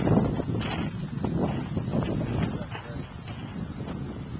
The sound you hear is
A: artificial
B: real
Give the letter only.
B